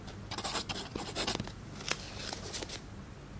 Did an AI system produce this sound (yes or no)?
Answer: no